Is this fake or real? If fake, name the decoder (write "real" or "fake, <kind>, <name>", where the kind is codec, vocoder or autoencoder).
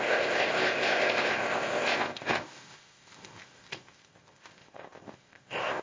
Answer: fake, codec, ZipCodec